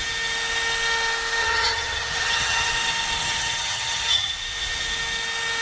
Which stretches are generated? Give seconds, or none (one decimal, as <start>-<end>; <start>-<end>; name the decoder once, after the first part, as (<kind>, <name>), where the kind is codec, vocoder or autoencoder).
1.4-2.7 (vocoder, HiFi-GAN); 3.2-4.3